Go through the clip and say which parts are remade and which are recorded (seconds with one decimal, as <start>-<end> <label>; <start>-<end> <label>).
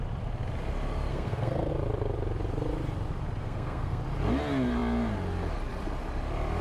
0.0-1.1 recorded; 1.1-1.7 remade; 1.7-3.4 recorded; 3.4-4.0 remade; 4.0-6.6 recorded